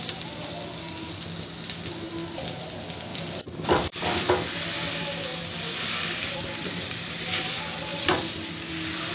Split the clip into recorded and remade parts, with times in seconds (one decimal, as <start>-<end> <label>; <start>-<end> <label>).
0.0-3.1 recorded; 3.1-4.3 remade; 4.3-5.3 recorded; 5.3-7.5 remade; 7.5-7.9 recorded; 7.9-8.5 remade; 8.5-9.1 recorded